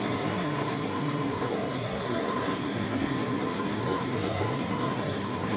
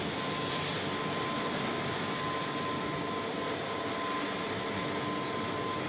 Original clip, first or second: second